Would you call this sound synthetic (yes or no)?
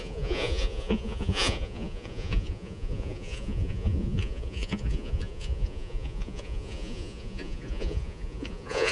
yes